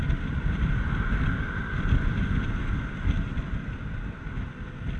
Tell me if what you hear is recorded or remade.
recorded